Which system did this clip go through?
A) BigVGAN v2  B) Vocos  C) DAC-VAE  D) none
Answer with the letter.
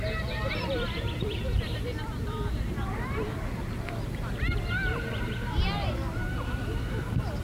A